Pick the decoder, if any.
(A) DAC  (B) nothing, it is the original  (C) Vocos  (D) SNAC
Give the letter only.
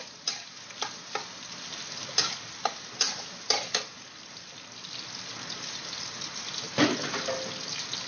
B